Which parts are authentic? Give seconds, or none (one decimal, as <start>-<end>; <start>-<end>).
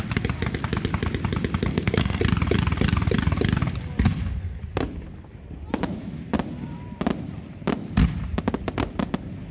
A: 0.0-1.7; 2.2-9.5